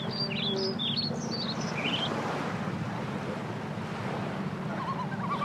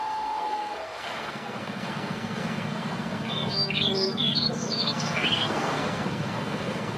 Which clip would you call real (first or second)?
first